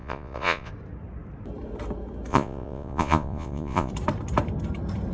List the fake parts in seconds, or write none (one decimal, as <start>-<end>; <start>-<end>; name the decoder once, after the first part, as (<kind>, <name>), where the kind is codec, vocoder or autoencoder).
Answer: 0.0-0.7 (vocoder, Vocos); 2.3-3.9